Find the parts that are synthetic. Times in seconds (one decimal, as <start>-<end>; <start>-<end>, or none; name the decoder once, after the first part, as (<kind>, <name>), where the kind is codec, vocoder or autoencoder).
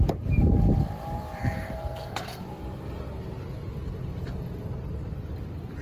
1.4-2.4 (codec, SNAC)